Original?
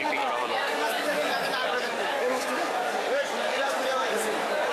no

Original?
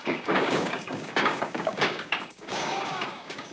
no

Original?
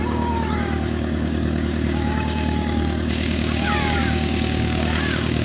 no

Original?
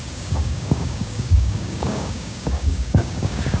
no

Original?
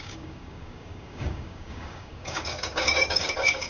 no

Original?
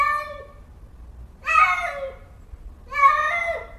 yes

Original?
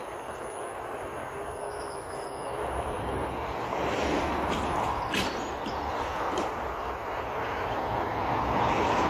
yes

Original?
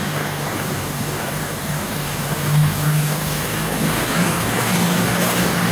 no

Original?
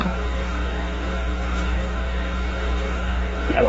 no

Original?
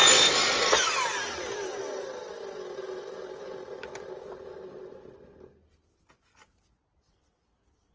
yes